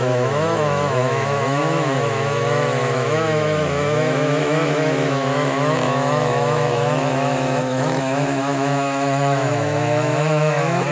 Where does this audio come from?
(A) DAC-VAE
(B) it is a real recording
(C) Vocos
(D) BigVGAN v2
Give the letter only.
A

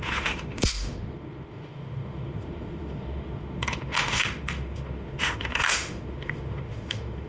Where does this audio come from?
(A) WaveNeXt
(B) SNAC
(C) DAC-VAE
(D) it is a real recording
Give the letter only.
C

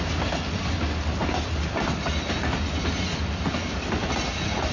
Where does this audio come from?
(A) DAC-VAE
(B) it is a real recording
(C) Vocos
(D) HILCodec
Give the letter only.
B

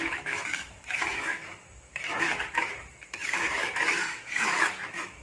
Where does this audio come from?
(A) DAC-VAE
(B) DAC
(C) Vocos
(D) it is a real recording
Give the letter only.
A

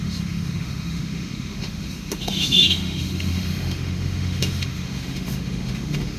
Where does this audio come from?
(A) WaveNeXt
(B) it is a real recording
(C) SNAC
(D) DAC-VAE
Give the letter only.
D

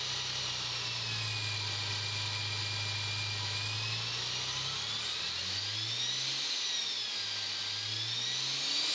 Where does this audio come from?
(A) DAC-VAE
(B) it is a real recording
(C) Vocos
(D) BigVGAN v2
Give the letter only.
B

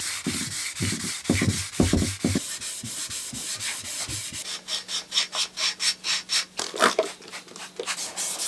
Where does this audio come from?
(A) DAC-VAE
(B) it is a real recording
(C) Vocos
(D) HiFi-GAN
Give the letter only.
B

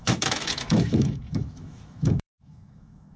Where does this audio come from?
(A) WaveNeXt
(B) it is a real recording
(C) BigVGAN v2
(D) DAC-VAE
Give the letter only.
D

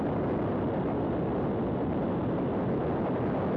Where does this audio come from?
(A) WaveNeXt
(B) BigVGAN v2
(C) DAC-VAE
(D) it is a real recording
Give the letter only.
D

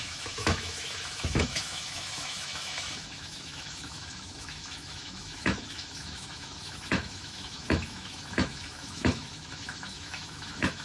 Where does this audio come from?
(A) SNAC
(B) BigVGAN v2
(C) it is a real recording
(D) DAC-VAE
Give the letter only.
D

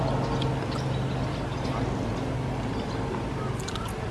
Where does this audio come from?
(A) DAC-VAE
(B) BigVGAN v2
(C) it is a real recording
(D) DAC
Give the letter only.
C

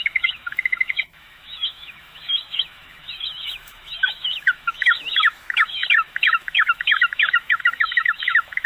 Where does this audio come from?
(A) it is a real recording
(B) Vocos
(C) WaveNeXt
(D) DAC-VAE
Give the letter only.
D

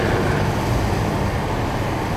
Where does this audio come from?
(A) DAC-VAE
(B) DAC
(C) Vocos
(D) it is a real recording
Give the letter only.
D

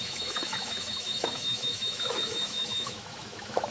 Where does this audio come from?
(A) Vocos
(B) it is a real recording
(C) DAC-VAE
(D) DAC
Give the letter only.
C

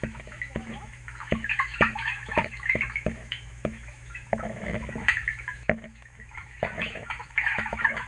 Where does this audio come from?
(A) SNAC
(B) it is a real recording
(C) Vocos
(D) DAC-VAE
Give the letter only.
D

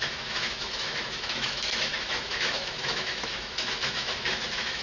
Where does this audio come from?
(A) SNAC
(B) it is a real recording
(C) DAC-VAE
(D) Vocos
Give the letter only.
C